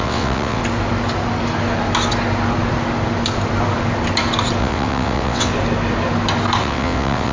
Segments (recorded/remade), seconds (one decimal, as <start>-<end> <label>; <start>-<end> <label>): 0.0-0.6 remade; 0.6-4.6 recorded; 4.6-5.5 remade; 5.5-6.6 recorded; 6.6-7.3 remade